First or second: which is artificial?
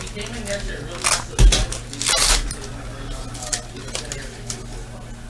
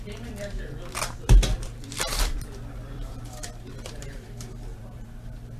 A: second